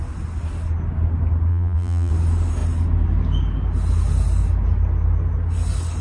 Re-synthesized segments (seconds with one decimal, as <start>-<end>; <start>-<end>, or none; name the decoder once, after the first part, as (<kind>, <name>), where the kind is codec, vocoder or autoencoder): 1.5-2.1 (vocoder, BigVGAN v2)